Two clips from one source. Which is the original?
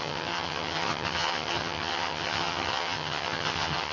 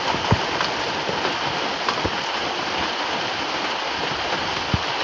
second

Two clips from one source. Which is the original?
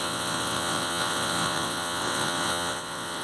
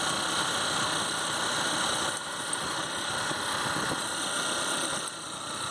second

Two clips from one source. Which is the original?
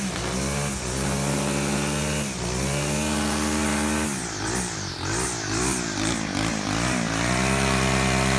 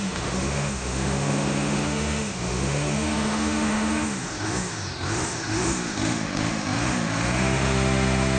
first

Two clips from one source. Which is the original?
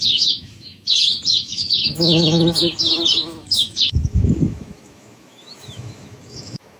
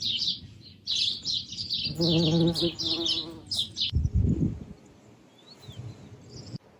second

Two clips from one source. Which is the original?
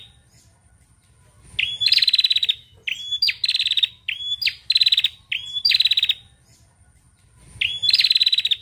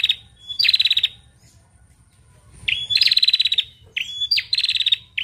first